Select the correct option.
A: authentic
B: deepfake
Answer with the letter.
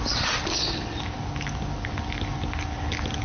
A